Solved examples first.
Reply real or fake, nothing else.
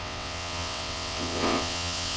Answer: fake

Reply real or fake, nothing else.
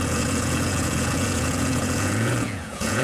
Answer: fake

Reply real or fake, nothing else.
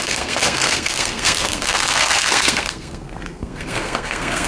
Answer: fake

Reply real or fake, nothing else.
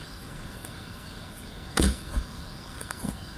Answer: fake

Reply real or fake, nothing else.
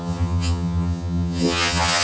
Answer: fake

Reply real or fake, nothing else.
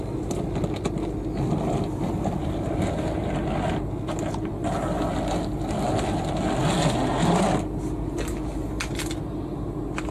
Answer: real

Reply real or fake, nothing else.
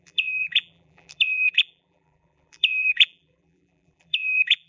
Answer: fake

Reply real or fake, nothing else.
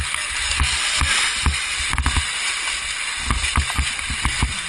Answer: real